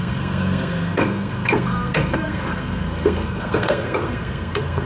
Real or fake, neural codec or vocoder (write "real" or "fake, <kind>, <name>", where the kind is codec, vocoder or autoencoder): fake, codec, SNAC